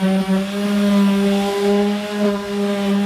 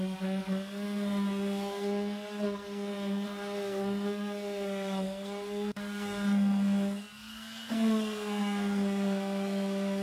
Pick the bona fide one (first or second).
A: first